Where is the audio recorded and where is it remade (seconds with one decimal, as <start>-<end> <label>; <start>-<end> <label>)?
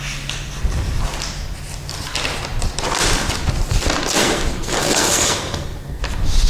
0.0-4.2 recorded; 4.2-6.0 remade; 6.0-6.5 recorded